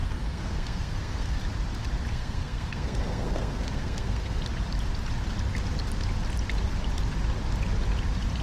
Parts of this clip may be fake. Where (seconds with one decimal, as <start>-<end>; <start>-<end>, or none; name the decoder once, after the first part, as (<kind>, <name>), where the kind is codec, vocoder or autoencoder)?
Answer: 0.0-1.4 (codec, SNAC); 2.1-4.4